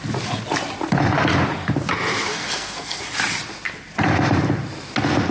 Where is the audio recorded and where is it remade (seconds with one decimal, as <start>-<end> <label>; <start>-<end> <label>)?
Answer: 0.0-2.3 recorded; 2.3-3.0 remade; 3.0-5.3 recorded